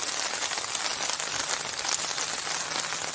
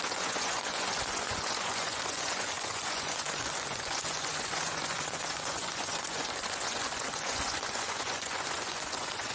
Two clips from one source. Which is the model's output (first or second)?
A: second